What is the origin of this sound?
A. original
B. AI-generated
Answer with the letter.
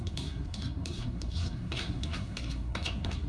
B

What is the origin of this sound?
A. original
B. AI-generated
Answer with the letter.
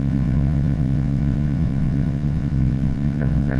B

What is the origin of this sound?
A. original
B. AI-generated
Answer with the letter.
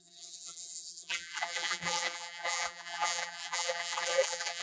B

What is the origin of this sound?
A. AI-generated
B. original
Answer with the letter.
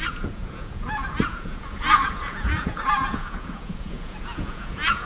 A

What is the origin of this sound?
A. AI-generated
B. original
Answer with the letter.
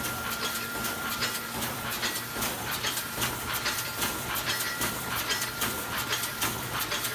A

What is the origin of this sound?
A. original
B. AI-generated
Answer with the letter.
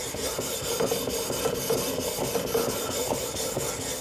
A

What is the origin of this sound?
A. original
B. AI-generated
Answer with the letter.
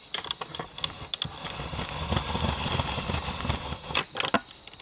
A